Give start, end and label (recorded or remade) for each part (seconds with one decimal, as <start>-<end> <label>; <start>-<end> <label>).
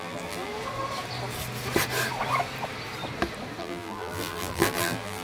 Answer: 0.0-0.5 remade; 0.5-3.6 recorded; 3.6-5.2 remade